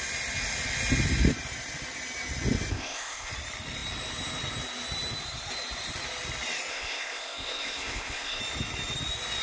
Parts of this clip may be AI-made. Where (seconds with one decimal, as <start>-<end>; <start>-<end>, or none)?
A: 2.7-3.3; 6.7-8.4